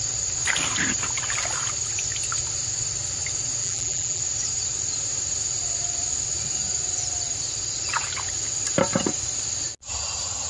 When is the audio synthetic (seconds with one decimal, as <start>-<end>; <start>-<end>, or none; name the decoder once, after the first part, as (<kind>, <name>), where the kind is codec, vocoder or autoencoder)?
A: 3.6-4.2 (vocoder, BigVGAN v2)